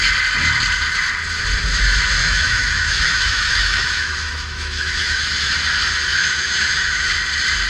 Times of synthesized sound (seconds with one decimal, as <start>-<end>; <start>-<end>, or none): 2.2-5.5; 6.1-7.1